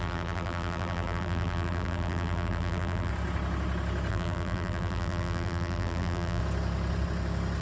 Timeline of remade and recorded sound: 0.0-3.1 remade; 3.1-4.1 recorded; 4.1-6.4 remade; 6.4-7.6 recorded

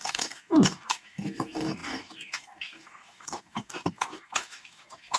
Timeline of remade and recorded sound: 0.0-5.2 remade